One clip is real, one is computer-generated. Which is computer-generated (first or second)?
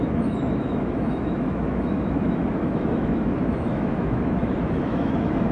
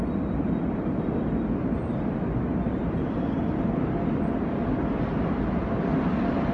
first